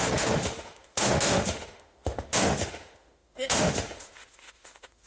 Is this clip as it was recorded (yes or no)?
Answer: no